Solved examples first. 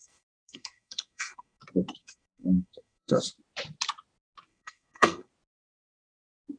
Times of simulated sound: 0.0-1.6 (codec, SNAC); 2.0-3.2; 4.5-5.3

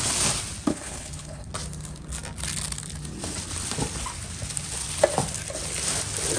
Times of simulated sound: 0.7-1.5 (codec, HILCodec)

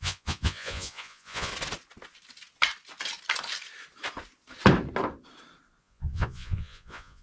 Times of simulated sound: 0.0-1.5 (vocoder, Vocos); 5.8-7.2

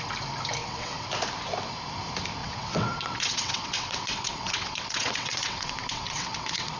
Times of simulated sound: 0.6-1.1 (vocoder, WaveNeXt); 2.4-6.8